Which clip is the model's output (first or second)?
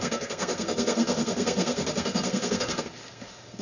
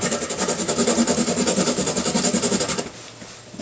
first